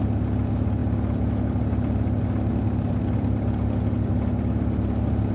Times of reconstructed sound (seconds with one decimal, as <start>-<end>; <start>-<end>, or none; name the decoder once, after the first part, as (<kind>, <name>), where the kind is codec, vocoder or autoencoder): none